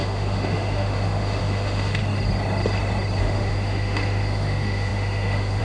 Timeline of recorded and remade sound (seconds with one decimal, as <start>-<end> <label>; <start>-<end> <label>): 0.0-2.0 remade; 2.0-3.2 recorded; 3.2-5.6 remade